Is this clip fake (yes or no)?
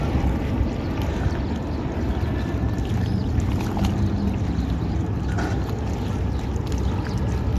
no